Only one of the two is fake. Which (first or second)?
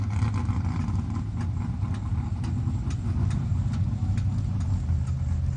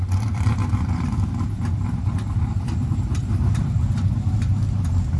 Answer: second